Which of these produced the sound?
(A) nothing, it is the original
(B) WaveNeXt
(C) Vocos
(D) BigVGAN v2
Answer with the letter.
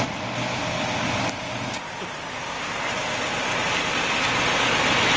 A